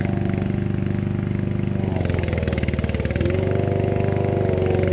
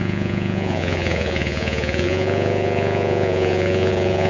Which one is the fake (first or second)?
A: second